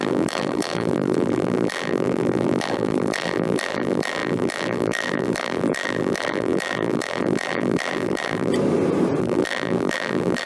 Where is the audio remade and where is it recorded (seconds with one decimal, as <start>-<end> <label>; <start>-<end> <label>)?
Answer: 0.0-8.5 remade; 8.5-9.2 recorded; 9.2-10.5 remade